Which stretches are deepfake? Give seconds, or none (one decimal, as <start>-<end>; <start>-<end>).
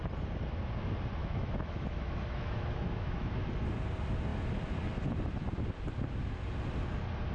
1.2-3.3